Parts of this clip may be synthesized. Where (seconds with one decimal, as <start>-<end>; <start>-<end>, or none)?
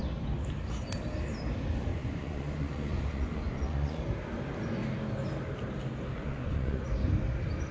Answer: 1.9-4.0; 6.2-6.8